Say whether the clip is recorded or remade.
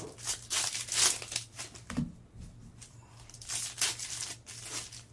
recorded